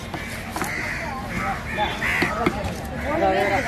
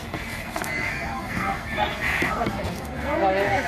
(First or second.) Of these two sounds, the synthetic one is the second